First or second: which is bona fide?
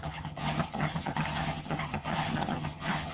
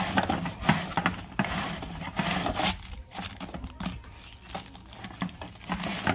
second